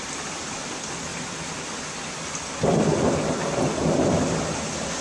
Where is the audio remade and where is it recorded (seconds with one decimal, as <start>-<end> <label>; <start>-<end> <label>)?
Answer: 0.0-5.0 recorded